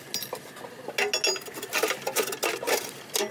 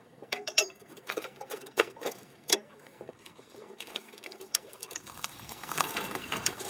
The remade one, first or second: second